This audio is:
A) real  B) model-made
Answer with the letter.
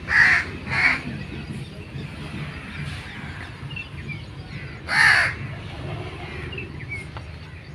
A